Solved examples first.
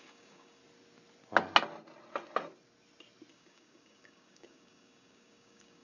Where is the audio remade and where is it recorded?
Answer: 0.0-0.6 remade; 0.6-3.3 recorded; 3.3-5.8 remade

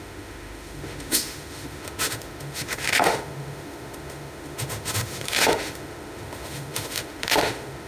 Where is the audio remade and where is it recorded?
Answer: 0.0-7.9 remade

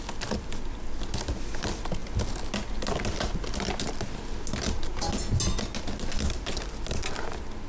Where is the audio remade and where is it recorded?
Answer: 0.0-7.7 recorded

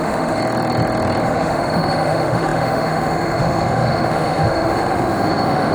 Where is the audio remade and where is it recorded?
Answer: 0.0-0.4 remade; 0.4-1.2 recorded; 1.2-5.7 remade

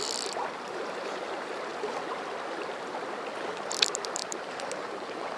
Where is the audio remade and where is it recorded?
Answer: 0.0-4.2 recorded; 4.2-5.4 remade

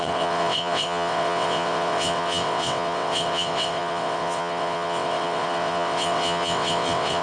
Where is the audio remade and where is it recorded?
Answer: 0.0-7.2 remade

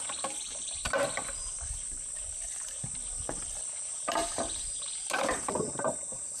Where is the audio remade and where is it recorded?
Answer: 0.0-0.8 remade; 0.8-3.8 recorded; 3.8-6.4 remade

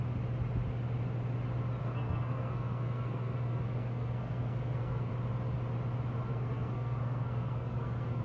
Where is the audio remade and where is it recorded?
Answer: 0.0-1.8 recorded; 1.8-5.1 remade; 5.1-6.3 recorded; 6.3-8.2 remade